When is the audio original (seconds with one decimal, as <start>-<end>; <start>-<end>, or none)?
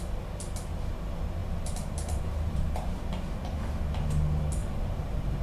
0.0-1.4; 2.9-4.6